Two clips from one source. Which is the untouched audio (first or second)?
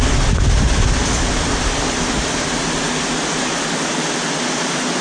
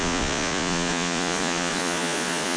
first